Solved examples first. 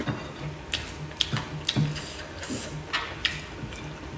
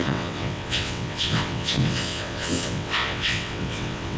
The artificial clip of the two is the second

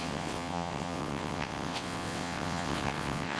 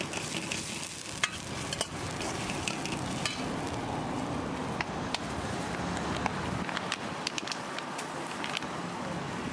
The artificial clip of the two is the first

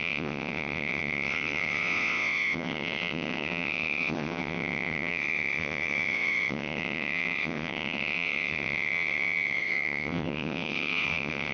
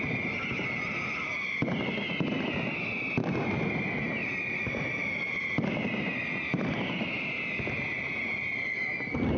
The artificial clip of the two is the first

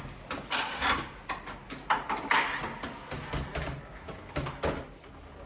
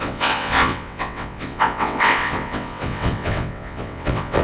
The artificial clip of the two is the second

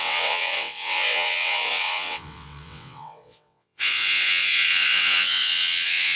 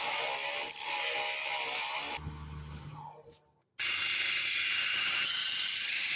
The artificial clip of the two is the first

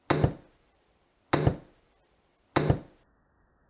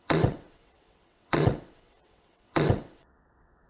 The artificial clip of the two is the second